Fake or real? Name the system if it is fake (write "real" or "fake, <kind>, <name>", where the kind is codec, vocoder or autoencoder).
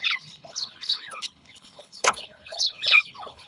fake, codec, HILCodec